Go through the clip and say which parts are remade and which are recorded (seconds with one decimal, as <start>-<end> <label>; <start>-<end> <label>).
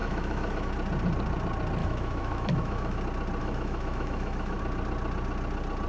0.0-0.7 remade; 0.7-1.8 recorded; 1.8-3.0 remade; 3.0-3.4 recorded; 3.4-4.6 remade; 4.6-5.9 recorded